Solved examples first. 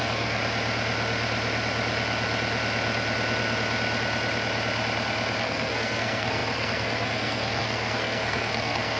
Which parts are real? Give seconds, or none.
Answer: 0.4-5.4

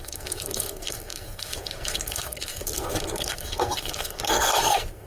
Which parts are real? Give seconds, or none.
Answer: none

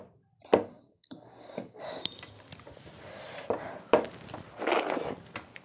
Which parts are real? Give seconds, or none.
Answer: 0.0-0.7; 1.8-5.6

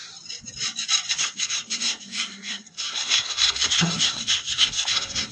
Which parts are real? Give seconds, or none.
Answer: 0.0-1.1

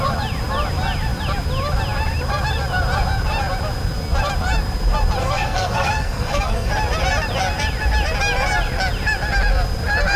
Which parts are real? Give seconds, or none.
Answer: 0.0-5.2; 6.7-10.2